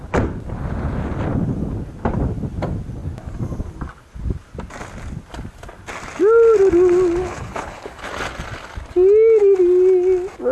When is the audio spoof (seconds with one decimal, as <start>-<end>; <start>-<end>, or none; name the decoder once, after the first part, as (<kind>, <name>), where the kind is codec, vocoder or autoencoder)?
7.2-8.1 (codec, HILCodec)